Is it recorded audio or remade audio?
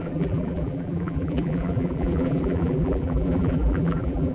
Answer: remade